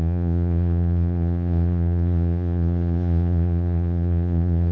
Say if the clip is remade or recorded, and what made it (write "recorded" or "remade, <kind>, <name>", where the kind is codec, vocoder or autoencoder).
remade, vocoder, Vocos